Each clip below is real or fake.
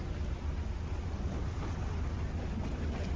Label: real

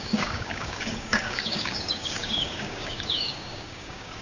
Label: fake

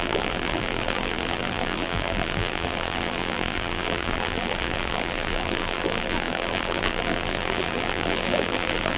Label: fake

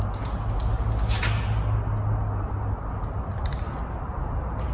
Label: real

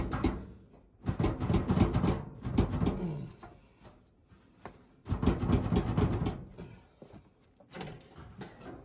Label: real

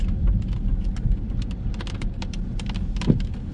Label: real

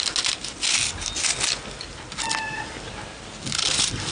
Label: real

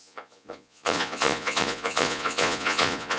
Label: fake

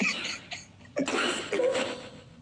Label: real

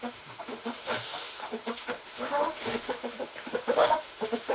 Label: fake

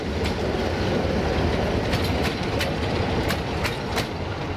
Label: real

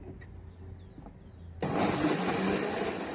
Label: real